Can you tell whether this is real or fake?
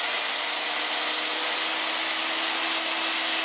real